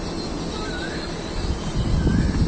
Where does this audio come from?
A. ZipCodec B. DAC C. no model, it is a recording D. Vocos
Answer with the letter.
C